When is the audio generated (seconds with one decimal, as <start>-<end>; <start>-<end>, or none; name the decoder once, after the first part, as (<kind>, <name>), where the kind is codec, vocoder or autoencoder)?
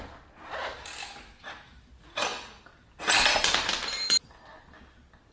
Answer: 1.1-1.9 (autoencoder, DAC-VAE)